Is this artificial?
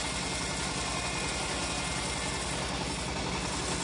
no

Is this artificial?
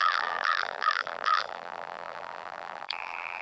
yes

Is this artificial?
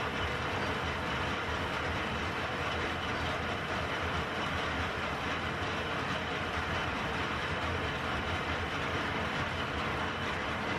yes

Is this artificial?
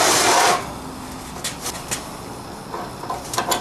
no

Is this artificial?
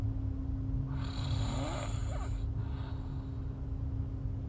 no